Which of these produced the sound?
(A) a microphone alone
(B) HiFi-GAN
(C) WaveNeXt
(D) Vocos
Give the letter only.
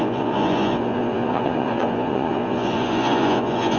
D